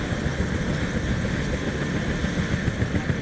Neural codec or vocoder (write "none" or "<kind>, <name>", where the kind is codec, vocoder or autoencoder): none